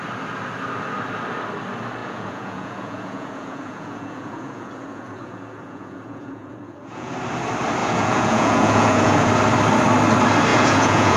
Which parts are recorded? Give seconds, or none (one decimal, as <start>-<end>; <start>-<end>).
0.0-2.0; 7.1-7.8; 9.3-10.5